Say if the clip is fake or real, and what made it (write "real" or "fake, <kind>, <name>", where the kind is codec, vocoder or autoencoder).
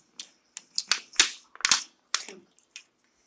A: real